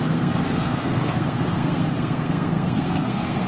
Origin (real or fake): fake